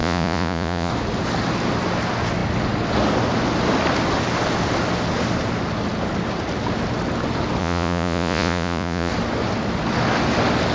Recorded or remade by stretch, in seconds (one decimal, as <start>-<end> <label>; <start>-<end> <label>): 0.0-0.9 remade; 0.9-7.6 recorded; 7.6-9.1 remade; 9.1-10.7 recorded